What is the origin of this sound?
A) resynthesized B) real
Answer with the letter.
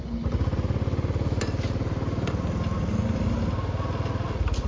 B